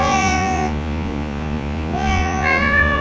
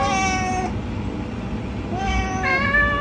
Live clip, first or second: second